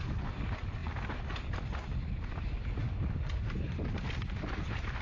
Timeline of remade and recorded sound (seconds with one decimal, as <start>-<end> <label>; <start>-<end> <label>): 0.0-5.0 recorded